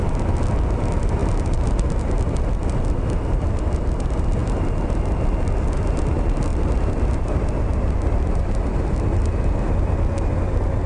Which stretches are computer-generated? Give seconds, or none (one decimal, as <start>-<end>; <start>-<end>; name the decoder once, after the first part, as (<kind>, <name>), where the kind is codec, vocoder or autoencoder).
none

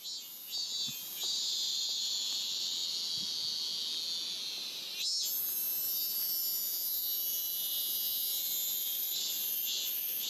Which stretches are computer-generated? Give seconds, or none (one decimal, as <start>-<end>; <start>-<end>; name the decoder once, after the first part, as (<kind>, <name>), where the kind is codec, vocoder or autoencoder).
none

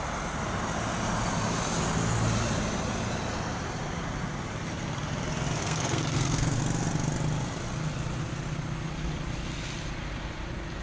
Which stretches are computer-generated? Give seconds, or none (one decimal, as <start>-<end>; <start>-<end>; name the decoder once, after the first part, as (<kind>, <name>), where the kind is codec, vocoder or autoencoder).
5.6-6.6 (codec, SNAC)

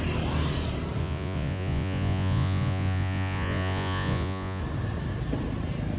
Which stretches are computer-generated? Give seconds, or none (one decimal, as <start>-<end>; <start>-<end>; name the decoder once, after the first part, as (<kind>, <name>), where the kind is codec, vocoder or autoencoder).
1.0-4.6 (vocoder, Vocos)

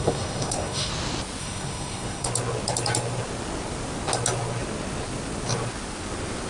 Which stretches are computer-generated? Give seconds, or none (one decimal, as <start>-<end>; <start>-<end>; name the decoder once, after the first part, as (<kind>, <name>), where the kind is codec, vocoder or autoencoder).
0.0-0.9 (codec, SNAC); 1.4-2.3

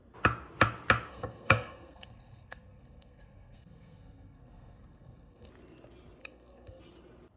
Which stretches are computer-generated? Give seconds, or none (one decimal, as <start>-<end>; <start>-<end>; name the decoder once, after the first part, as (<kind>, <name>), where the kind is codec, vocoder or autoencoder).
1.1-5.5 (codec, SNAC); 6.2-6.8